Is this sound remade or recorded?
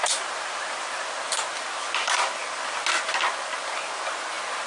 recorded